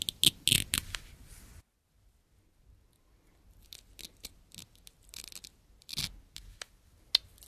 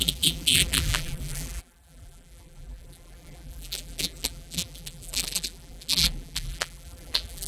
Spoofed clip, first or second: second